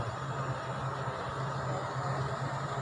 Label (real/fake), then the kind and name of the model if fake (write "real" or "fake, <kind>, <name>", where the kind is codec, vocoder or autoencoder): real